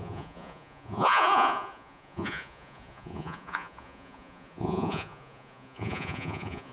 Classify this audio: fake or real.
fake